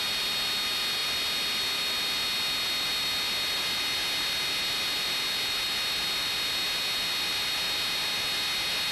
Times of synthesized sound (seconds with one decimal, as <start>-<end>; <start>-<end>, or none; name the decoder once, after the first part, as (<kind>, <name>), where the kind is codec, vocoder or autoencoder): none